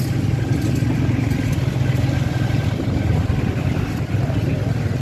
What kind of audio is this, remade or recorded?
recorded